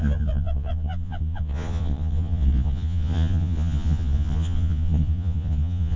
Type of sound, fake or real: fake